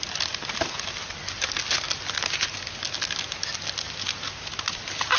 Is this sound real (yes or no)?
yes